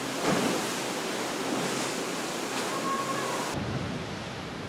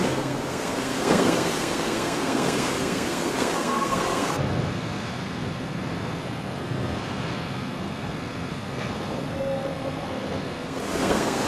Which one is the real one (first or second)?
first